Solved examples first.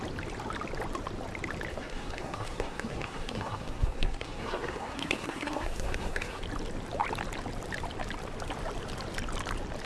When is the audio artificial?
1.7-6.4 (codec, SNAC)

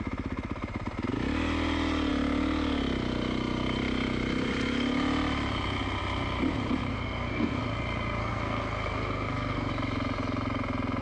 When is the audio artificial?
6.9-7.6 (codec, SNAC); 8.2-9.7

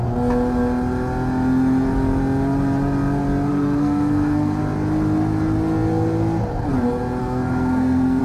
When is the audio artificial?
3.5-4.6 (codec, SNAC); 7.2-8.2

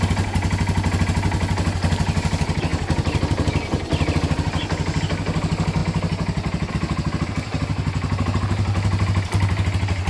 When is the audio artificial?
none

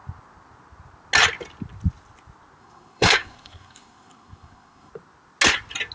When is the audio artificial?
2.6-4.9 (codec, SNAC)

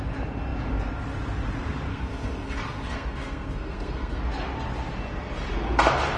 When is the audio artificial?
1.9-4.2 (codec, SNAC)

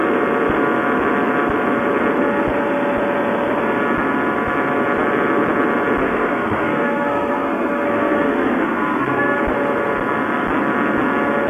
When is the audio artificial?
6.0-9.4 (codec, SNAC)

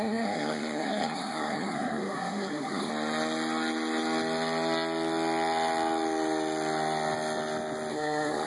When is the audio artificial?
0.0-2.9 (codec, SNAC); 7.9-8.5